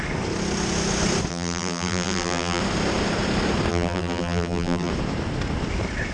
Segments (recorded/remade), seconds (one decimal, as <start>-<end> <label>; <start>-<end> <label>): 0.0-1.3 recorded; 1.3-2.6 remade; 2.6-3.7 recorded; 3.7-4.9 remade; 4.9-6.1 recorded